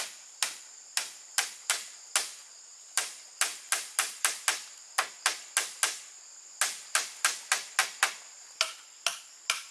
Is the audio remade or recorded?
recorded